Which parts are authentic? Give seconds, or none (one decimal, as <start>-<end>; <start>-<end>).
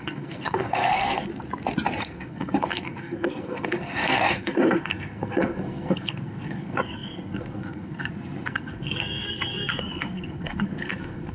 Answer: 1.3-2.0